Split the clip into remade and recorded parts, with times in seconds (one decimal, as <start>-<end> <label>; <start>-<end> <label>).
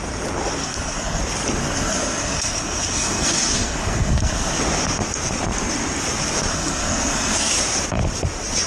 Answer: 0.0-0.6 recorded; 0.6-1.2 remade; 1.2-1.6 recorded; 1.6-4.6 remade; 4.6-6.5 recorded; 6.5-7.5 remade; 7.5-8.7 recorded